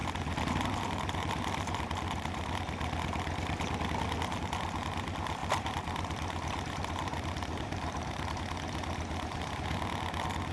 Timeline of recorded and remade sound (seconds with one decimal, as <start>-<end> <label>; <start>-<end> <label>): 0.0-2.6 remade; 2.6-5.4 recorded; 5.4-8.4 remade; 8.4-10.5 recorded